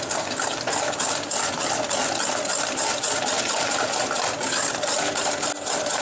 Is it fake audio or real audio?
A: real